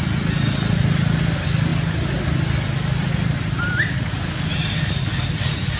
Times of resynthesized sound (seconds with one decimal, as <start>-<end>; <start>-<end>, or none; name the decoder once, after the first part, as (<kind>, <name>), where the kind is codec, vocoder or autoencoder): none